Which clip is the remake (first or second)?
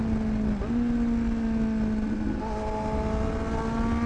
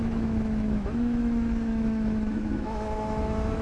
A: second